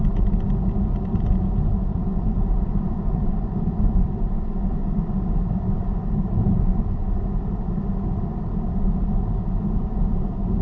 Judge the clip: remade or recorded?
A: recorded